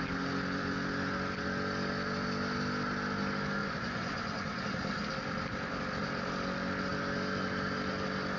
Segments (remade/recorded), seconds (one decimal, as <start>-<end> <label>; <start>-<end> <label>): 0.0-3.6 recorded; 3.6-4.6 remade; 4.6-8.4 recorded